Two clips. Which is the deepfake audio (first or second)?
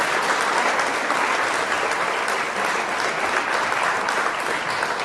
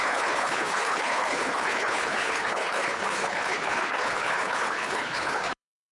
second